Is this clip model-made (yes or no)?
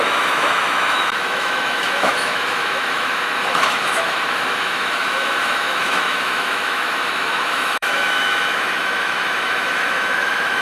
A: yes